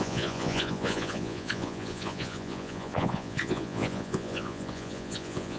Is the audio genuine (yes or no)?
no